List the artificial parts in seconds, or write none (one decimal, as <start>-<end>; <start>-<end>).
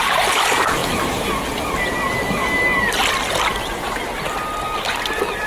none